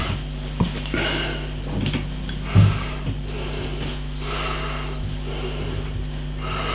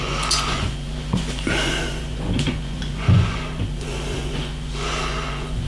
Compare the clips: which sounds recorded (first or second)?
first